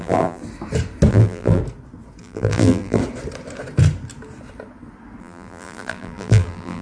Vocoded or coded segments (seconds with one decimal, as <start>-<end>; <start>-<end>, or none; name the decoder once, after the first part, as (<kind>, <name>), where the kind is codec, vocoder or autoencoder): 0.0-0.4 (vocoder, BigVGAN v2); 1.1-1.6; 2.2-3.0; 5.2-6.8

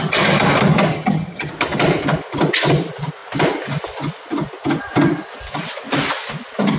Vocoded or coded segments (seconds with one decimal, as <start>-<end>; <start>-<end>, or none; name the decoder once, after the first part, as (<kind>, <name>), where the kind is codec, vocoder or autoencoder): 0.9-1.5 (vocoder, HiFi-GAN)

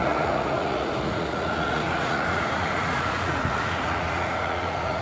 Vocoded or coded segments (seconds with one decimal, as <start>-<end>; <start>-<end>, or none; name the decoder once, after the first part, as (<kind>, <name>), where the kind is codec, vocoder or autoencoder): 0.0-5.0 (vocoder, Vocos)

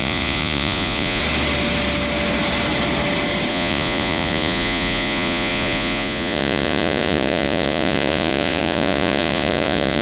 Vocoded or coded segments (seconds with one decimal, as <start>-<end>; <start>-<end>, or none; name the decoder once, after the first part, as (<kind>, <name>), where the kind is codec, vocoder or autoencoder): 0.0-1.2 (vocoder, Vocos); 3.5-10.0

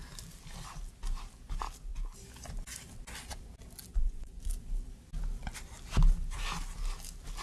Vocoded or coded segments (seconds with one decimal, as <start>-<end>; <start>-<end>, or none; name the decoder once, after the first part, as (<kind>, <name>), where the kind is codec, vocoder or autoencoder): 3.9-4.4 (vocoder, Vocos)

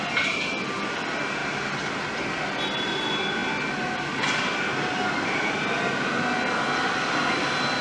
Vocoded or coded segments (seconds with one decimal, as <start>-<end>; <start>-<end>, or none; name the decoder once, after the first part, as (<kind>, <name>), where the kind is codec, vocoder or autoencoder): none

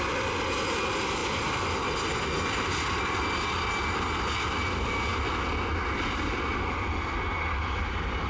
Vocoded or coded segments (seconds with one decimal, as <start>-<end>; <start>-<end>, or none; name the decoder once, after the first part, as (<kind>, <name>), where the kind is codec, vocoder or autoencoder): none

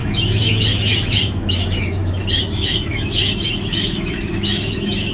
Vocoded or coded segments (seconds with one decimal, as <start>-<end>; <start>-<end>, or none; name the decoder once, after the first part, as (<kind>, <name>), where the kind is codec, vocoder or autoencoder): 0.0-5.1 (autoencoder, DAC-VAE)